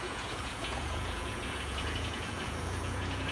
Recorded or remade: remade